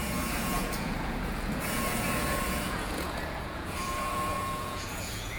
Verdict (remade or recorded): remade